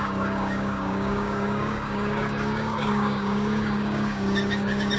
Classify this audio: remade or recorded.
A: remade